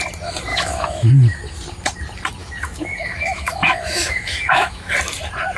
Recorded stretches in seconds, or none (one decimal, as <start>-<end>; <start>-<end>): 0.0-0.5; 1.1-2.4; 4.9-5.6